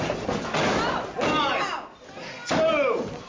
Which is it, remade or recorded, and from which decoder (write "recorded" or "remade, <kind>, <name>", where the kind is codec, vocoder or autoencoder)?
recorded